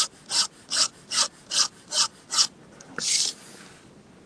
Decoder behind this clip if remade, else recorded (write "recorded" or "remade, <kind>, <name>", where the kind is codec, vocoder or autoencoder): recorded